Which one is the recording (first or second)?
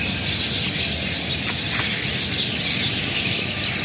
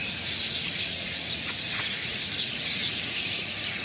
first